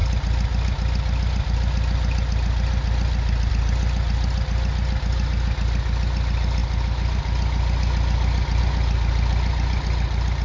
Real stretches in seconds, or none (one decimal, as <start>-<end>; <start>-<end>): 0.0-10.4